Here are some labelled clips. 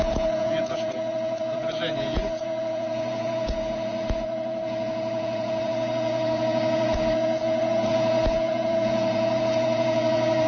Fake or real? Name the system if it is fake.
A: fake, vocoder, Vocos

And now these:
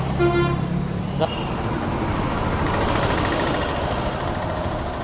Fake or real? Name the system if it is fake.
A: real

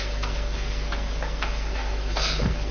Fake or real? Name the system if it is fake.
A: fake, codec, SNAC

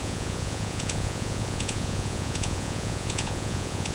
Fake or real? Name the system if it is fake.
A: fake, vocoder, Vocos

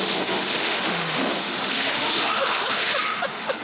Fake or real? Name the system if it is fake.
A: fake, autoencoder, DAC-VAE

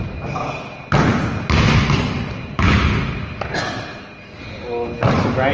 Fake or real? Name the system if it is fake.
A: real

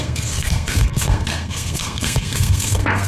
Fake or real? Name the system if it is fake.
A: fake, codec, SNAC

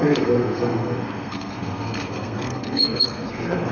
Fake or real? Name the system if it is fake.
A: fake, codec, SNAC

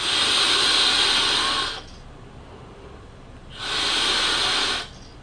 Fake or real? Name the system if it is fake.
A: real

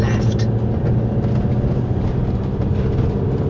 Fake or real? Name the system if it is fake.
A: real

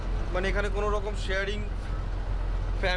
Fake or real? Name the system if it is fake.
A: real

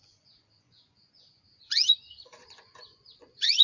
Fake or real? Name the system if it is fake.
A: fake, vocoder, Vocos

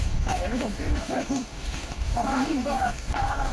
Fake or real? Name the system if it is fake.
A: fake, codec, DAC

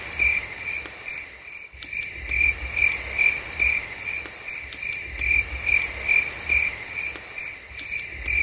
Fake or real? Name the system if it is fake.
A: fake, vocoder, BigVGAN v2